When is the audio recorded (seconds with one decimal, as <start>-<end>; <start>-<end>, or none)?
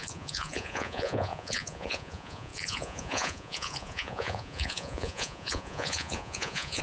none